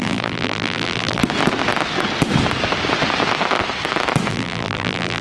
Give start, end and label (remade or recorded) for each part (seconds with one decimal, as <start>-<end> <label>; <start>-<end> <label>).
0.0-1.2 remade; 1.2-4.3 recorded; 4.3-5.2 remade